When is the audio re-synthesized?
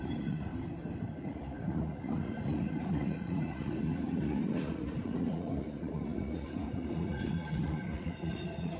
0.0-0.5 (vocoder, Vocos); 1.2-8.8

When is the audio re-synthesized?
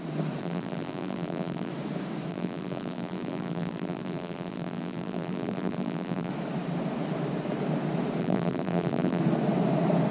0.4-1.7 (vocoder, BigVGAN v2); 2.3-6.3; 8.2-9.2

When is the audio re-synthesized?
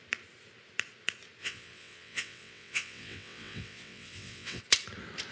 1.4-4.6 (vocoder, WaveNeXt)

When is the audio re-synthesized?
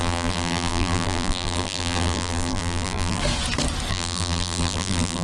0.0-3.2 (vocoder, BigVGAN v2); 3.9-5.2